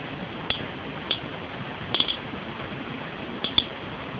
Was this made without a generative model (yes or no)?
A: yes